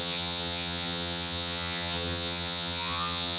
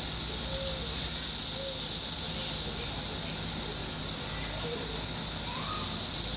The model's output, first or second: first